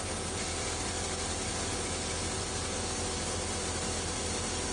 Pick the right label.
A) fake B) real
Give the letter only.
B